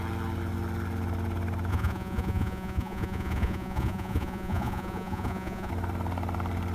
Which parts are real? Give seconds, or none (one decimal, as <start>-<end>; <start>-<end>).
0.0-1.7; 5.7-6.7